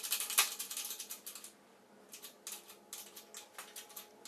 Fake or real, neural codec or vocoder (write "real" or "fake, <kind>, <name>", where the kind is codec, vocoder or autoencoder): real